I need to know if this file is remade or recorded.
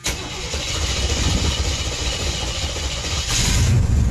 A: remade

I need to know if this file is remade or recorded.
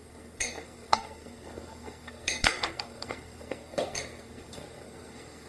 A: remade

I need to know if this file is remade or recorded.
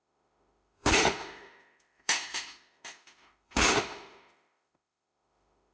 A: remade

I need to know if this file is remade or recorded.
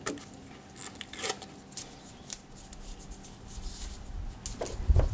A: recorded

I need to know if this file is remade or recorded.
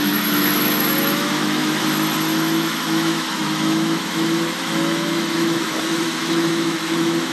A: remade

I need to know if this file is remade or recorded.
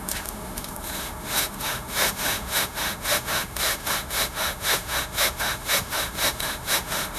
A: remade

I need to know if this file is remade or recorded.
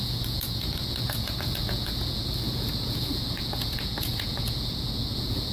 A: remade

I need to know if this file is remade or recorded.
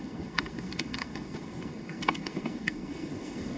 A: remade